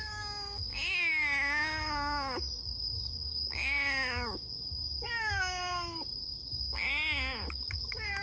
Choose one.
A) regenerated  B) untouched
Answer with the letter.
A